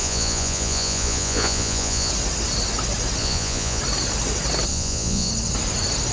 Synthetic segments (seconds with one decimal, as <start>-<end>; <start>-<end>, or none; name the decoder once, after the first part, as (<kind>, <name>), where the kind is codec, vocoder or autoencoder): 0.0-2.1 (vocoder, Vocos); 3.2-3.8; 4.7-5.3